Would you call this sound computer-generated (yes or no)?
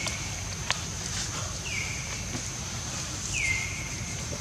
no